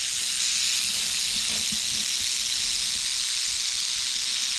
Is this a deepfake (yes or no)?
no